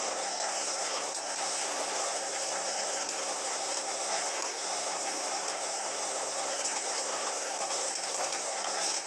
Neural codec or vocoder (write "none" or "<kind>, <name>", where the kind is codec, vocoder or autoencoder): codec, SNAC